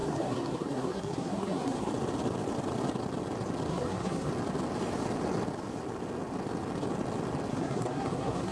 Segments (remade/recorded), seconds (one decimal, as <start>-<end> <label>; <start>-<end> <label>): 0.0-1.9 remade; 1.9-3.7 recorded; 3.7-4.3 remade; 4.3-7.5 recorded; 7.5-8.5 remade